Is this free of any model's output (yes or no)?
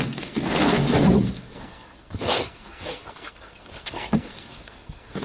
no